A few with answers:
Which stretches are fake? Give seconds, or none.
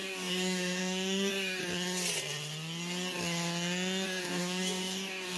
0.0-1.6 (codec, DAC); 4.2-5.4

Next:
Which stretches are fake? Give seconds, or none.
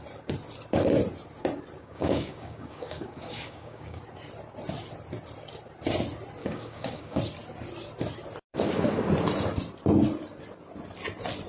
1.8-4.0 (codec, DAC); 6.4-7.2; 8.5-9.1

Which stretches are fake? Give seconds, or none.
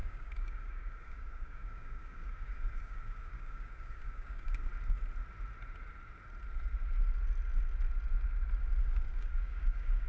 0.0-4.7 (codec, DAC); 8.8-10.1